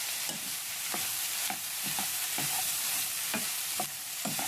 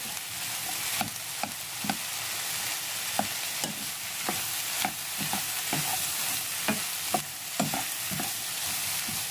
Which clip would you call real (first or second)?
second